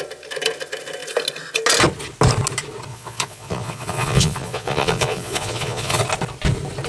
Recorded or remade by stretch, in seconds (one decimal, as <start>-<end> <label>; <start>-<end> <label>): 0.0-2.9 recorded; 2.9-6.0 remade; 6.0-6.9 recorded